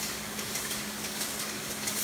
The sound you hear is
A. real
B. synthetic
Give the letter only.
B